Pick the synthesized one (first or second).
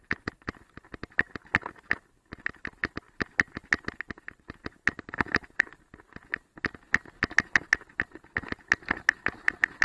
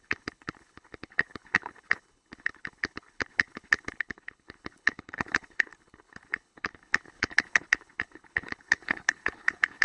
second